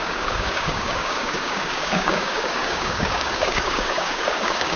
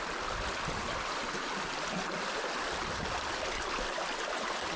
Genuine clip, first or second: second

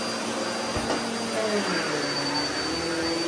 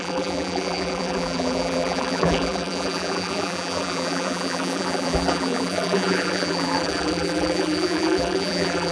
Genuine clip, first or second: first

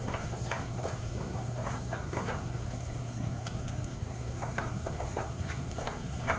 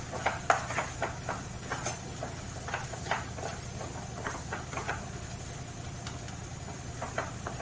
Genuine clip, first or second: second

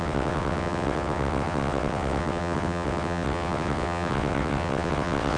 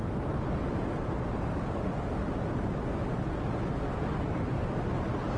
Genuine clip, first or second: second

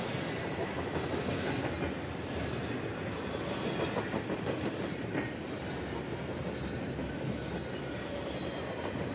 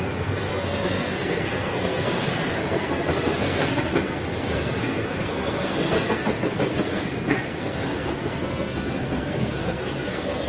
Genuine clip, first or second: first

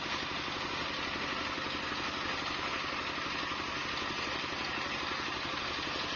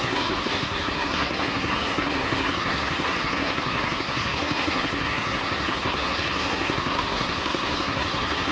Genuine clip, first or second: first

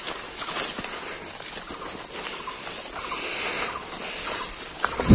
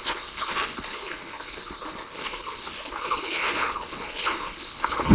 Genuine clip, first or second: first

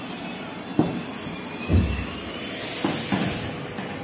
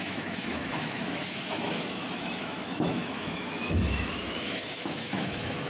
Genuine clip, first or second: first